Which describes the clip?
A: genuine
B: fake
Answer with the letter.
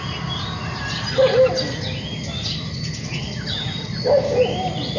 A